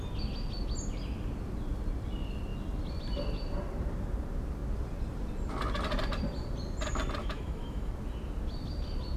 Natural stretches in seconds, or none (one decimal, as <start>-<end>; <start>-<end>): 0.0-7.2; 7.9-9.2